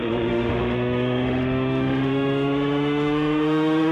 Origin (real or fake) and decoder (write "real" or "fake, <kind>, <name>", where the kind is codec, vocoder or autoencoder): fake, autoencoder, DAC-VAE